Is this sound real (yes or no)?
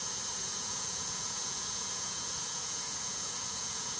no